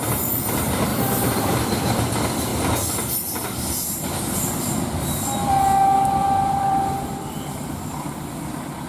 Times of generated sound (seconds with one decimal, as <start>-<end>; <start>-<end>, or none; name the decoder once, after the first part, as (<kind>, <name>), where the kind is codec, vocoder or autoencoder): 0.9-1.6 (vocoder, BigVGAN v2); 6.2-7.1